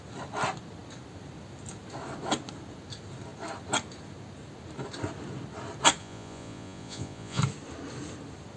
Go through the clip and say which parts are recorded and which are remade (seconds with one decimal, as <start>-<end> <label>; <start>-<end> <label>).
0.0-6.0 recorded; 6.0-7.4 remade; 7.4-8.6 recorded